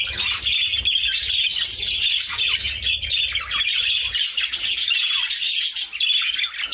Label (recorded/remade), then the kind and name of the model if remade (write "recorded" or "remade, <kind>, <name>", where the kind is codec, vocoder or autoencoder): recorded